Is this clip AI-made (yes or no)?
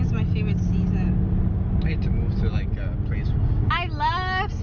no